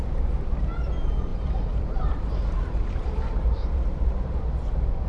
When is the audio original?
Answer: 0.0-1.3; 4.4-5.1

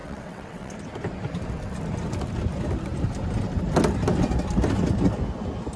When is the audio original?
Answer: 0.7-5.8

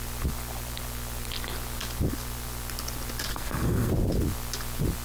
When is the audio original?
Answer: 0.0-3.3; 3.9-5.0

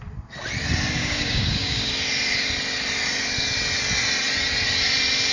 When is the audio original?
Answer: 0.0-1.0; 1.9-5.3

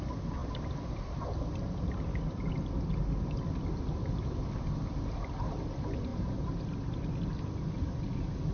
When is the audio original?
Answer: 0.0-0.4; 2.5-6.1; 6.7-8.5